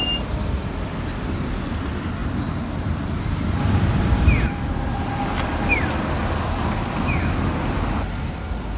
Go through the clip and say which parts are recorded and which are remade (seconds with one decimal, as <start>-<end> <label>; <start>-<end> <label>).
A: 0.0-8.8 recorded